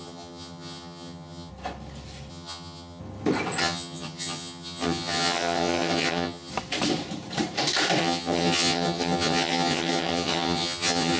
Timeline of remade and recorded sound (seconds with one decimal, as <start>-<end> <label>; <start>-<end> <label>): 0.0-1.5 remade; 1.5-2.3 recorded; 2.3-3.0 remade; 3.0-3.6 recorded; 3.6-6.5 remade; 6.5-8.0 recorded; 8.0-11.2 remade